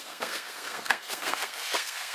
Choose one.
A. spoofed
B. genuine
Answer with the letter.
A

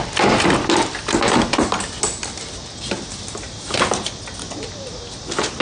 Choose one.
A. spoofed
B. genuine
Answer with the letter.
B